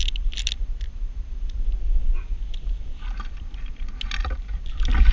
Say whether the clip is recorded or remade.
recorded